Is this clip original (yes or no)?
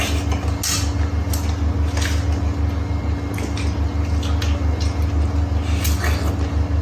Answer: yes